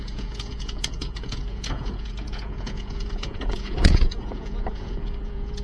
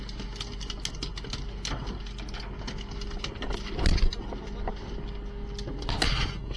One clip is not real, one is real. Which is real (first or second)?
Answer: second